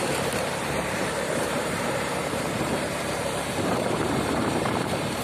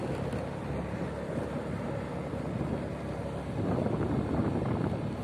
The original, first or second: second